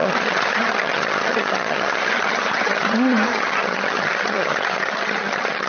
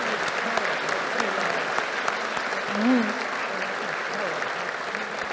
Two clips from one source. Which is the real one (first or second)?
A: second